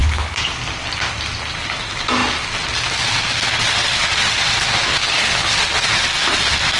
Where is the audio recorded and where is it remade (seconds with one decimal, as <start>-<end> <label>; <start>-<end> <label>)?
0.0-0.5 remade; 0.5-5.0 recorded; 5.0-5.5 remade; 5.5-6.8 recorded